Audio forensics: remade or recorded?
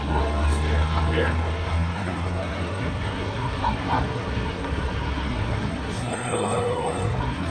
remade